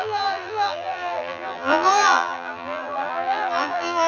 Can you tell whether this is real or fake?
fake